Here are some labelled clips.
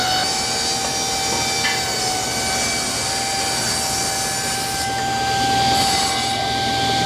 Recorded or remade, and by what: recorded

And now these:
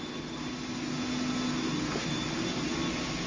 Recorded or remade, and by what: recorded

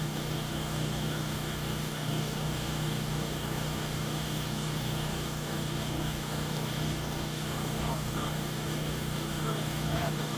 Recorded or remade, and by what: remade, codec, DAC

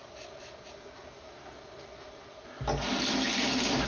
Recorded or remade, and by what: recorded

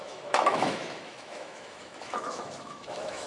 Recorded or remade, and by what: remade, autoencoder, DAC-VAE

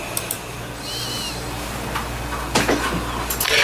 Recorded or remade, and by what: recorded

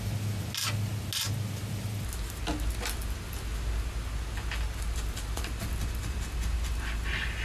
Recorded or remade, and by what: recorded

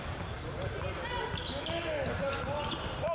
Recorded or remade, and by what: recorded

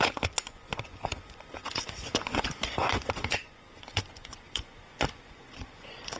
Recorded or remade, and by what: remade, vocoder, Vocos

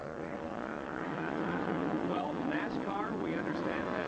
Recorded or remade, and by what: remade, vocoder, Vocos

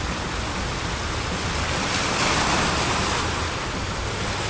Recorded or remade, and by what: recorded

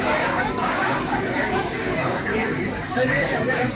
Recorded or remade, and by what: remade, codec, DAC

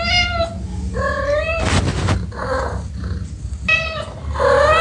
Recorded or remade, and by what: recorded